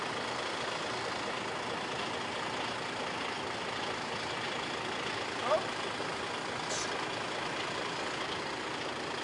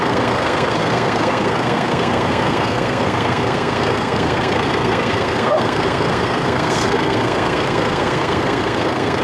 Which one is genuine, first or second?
first